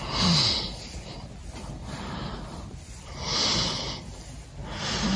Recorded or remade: recorded